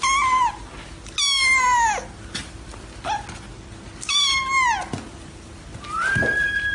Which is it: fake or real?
real